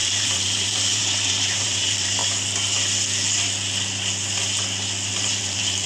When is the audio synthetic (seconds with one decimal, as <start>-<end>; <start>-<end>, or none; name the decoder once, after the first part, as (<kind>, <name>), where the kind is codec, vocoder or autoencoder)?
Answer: 0.0-2.2 (vocoder, BigVGAN v2); 5.1-5.9